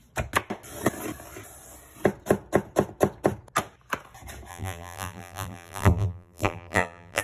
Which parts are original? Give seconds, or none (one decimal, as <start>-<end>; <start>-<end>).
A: 0.0-4.5